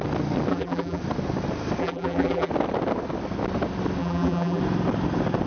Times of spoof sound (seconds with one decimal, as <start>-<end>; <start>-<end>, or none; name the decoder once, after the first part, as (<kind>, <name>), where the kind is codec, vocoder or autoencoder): 0.5-1.0 (vocoder, BigVGAN v2); 1.8-2.5; 4.0-4.6